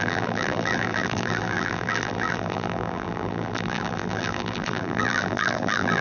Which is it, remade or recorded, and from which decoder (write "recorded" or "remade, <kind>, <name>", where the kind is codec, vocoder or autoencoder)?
remade, vocoder, BigVGAN v2